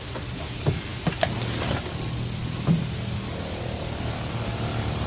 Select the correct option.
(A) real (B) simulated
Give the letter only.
A